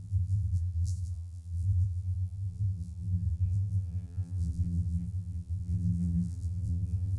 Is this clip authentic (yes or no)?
no